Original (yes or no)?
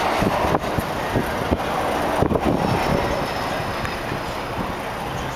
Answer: yes